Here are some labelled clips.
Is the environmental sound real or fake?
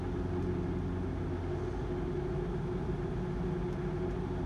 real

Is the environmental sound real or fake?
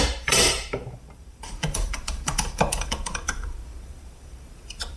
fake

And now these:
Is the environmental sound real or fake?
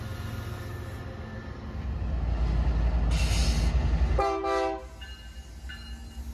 real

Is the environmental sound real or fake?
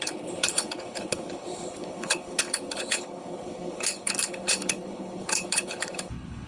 fake